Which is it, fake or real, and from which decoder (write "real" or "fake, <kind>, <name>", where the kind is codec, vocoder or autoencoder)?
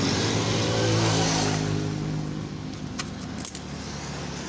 real